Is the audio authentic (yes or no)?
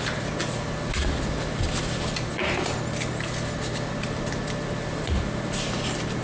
yes